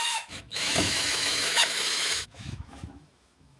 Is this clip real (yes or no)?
no